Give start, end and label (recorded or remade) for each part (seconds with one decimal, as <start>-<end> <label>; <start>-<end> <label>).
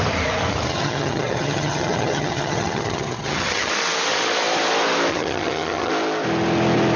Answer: 0.0-0.7 recorded; 0.7-3.7 remade; 3.7-5.1 recorded; 5.1-5.9 remade; 5.9-7.0 recorded